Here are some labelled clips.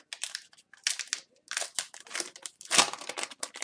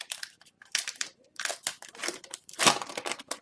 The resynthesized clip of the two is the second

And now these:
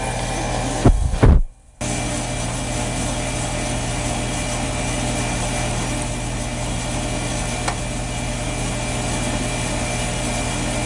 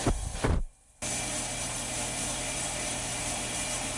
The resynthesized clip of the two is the second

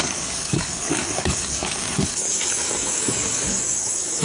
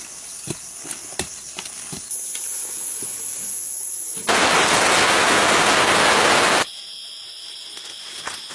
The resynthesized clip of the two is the first